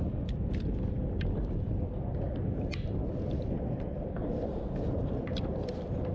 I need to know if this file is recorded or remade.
recorded